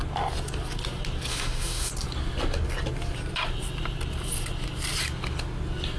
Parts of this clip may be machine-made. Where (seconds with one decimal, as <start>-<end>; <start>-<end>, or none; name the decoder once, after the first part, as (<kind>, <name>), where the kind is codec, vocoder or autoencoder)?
1.3-1.9 (autoencoder, DAC-VAE)